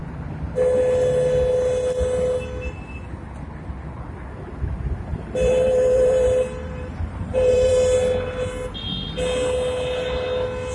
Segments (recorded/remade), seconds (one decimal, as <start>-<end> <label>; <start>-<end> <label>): 0.0-5.1 recorded; 5.1-7.7 remade; 7.7-10.7 recorded